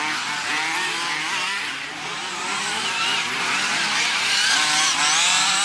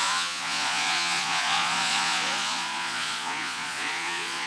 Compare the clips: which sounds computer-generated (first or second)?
second